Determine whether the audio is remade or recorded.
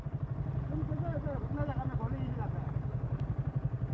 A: recorded